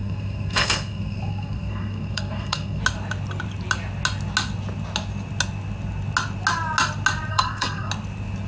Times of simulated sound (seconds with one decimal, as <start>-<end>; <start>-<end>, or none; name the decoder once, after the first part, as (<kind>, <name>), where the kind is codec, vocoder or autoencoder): 0.0-2.8 (codec, SNAC); 7.3-7.9